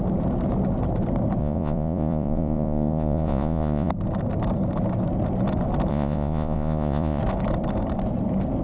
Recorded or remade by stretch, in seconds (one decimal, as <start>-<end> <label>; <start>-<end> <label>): 0.0-1.4 recorded; 1.4-3.9 remade; 3.9-5.9 recorded; 5.9-7.2 remade; 7.2-8.6 recorded